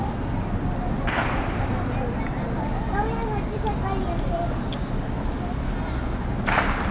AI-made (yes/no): no